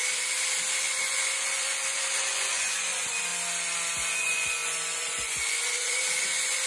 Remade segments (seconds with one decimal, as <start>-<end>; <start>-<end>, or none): 0.8-3.3; 4.1-6.7